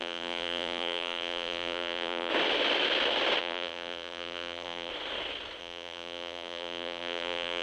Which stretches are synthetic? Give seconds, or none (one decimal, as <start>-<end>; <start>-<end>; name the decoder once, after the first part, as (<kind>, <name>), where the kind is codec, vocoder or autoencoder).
0.0-2.3 (vocoder, BigVGAN v2); 3.4-4.9; 5.6-7.6